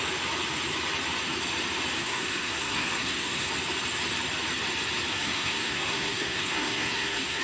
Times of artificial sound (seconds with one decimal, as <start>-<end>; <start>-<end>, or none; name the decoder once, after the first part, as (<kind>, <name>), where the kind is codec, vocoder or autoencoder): 2.0-3.5 (codec, SNAC); 5.1-7.4